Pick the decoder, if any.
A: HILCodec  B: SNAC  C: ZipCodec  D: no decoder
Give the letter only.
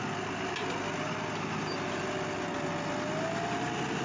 D